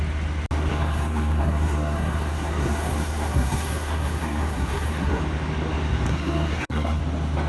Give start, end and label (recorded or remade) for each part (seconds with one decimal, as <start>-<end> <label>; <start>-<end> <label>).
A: 0.0-0.7 recorded; 0.7-5.2 remade; 5.2-6.1 recorded; 6.1-7.0 remade; 7.0-7.5 recorded